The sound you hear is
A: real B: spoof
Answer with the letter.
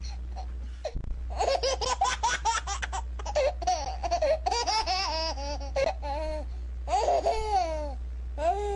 A